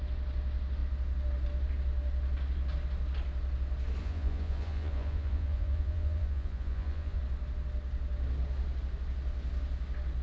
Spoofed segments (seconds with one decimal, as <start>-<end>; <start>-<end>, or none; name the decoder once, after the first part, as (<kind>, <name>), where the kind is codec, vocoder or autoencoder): 4.0-7.2 (vocoder, Vocos)